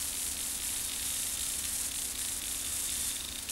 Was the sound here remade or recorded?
recorded